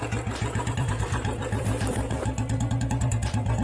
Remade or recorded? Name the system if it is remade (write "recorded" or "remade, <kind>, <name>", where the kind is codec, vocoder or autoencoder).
remade, vocoder, BigVGAN v2